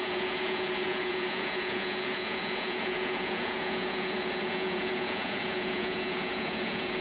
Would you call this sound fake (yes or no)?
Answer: yes